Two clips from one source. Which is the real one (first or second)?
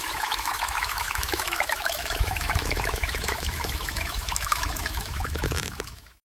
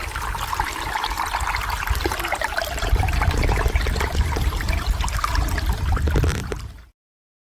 second